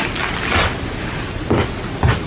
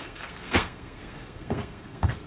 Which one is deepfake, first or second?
second